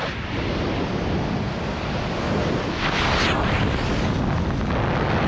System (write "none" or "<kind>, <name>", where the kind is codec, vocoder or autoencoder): none